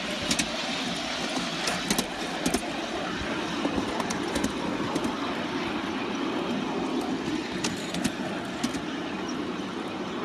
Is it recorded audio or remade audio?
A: recorded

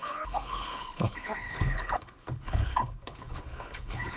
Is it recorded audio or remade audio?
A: remade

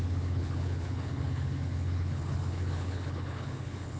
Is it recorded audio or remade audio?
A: remade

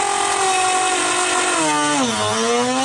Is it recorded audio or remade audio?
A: recorded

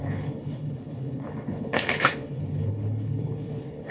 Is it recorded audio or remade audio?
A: remade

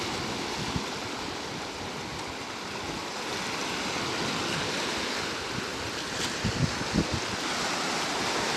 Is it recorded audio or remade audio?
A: recorded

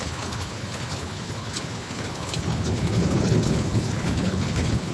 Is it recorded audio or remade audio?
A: remade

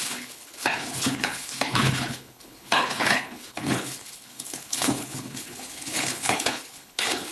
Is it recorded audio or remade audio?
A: remade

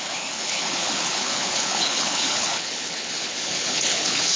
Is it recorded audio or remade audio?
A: remade